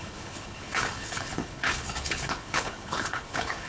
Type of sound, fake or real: fake